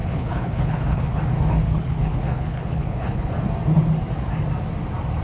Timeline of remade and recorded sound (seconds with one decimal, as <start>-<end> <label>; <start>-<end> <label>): 0.0-1.2 remade; 1.2-1.7 recorded; 1.7-3.3 remade; 3.3-5.2 recorded